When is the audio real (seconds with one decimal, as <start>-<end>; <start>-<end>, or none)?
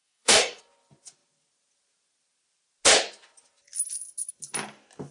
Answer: 0.6-5.1